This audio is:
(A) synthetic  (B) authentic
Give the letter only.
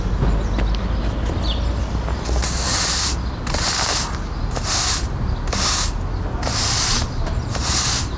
B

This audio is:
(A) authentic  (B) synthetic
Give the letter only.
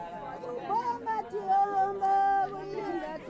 A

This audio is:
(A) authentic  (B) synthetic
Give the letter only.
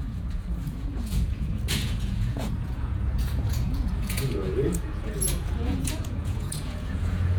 B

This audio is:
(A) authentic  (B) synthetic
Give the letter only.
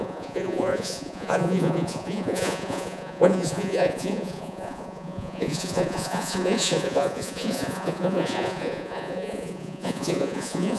B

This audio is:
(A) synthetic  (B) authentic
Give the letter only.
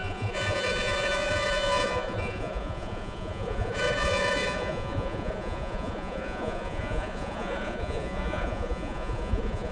A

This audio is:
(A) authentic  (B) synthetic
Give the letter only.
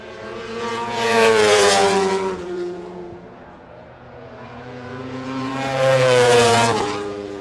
B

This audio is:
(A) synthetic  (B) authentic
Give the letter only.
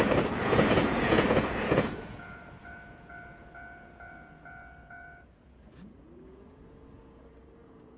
A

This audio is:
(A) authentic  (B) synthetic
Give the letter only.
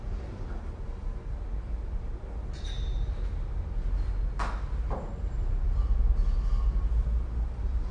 A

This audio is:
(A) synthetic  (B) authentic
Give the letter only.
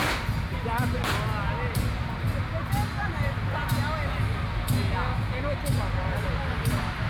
B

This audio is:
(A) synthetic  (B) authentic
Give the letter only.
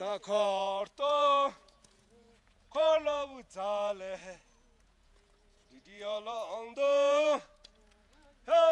A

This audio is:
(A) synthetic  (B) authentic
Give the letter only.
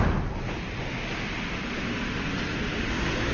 B